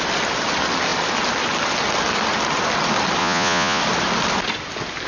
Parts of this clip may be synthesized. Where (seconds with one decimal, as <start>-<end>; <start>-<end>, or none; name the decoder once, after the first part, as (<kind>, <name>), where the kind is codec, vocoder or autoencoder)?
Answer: 3.2-3.8 (vocoder, Vocos)